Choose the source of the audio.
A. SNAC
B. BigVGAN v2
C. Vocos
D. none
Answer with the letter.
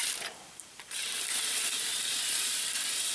B